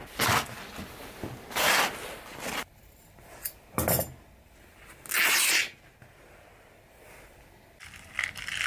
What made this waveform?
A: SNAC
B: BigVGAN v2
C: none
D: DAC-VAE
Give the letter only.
C